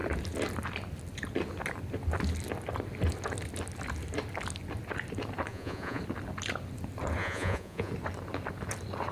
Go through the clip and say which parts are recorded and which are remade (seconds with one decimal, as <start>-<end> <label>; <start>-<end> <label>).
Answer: 0.0-5.5 recorded; 5.5-6.0 remade; 6.0-7.2 recorded; 7.2-7.9 remade; 7.9-9.1 recorded

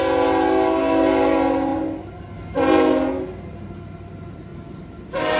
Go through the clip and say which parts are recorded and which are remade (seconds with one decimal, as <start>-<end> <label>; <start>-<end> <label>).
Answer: 0.0-5.4 recorded